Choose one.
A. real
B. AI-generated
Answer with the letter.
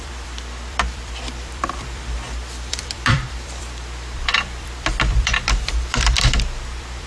B